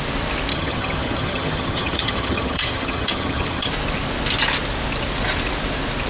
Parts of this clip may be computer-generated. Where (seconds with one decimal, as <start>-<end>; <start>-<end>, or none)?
0.5-3.7